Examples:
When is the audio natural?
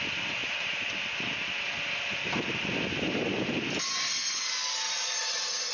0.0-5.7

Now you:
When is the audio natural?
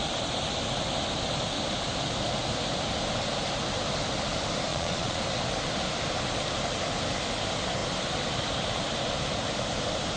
0.0-4.7; 5.2-10.2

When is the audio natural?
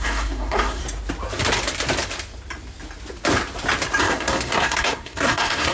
0.8-4.0